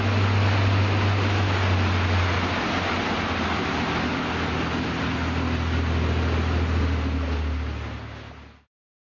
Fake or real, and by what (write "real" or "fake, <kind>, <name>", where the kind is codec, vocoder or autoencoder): real